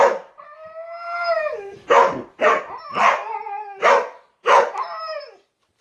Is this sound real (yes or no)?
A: yes